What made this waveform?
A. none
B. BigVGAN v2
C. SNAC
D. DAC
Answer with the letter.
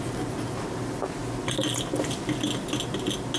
A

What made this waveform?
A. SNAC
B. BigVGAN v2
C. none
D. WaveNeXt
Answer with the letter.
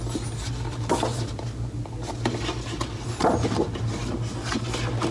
C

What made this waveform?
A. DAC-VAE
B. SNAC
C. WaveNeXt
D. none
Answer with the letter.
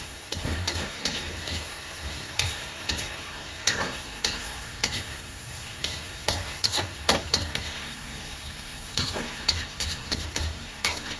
B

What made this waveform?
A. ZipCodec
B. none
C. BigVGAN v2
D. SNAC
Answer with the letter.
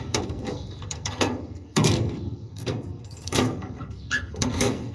D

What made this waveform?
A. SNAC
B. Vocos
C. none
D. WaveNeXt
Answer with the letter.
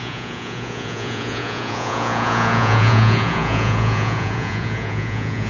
B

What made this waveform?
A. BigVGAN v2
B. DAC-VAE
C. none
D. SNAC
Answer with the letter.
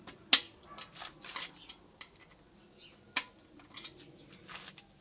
C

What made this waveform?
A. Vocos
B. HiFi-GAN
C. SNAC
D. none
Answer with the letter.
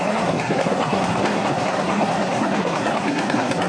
C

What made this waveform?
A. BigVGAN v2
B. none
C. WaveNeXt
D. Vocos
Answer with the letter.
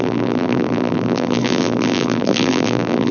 A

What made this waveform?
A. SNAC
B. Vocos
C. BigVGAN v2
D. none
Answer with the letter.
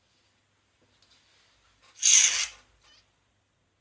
D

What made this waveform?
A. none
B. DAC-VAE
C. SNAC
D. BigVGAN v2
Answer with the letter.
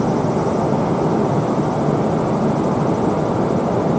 A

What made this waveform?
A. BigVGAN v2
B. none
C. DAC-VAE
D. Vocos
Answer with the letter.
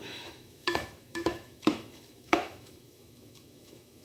C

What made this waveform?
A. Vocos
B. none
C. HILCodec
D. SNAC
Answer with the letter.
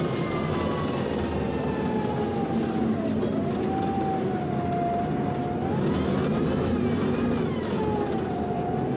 B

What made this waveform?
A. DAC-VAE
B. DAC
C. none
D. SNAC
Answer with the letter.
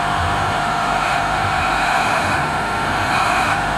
A